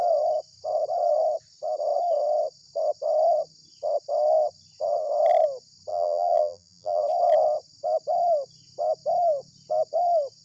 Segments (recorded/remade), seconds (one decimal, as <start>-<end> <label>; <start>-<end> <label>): 0.0-5.9 recorded; 5.9-7.0 remade; 7.0-10.4 recorded